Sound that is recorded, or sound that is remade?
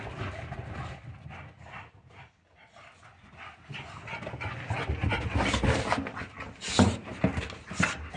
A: recorded